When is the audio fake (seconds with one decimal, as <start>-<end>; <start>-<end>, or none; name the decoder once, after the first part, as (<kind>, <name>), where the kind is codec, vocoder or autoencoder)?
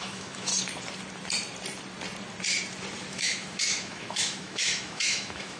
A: 0.0-0.5 (autoencoder, DAC-VAE); 3.1-5.6